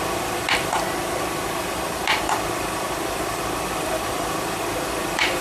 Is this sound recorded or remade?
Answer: remade